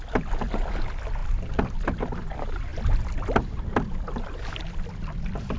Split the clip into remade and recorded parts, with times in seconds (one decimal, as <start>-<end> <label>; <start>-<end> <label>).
0.0-5.6 recorded